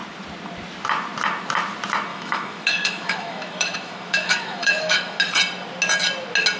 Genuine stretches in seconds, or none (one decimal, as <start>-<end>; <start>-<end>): 0.0-2.1; 5.2-6.6